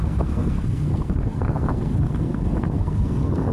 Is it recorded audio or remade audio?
remade